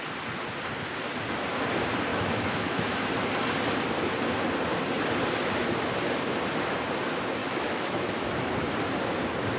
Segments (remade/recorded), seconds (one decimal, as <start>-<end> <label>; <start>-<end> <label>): 0.0-2.1 recorded; 2.1-3.1 remade; 3.1-7.4 recorded; 7.4-8.5 remade; 8.5-9.6 recorded